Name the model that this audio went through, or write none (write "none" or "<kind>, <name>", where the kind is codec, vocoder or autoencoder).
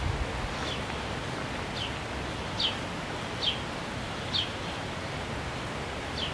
none